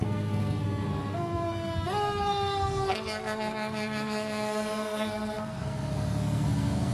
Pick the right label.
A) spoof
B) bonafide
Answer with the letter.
A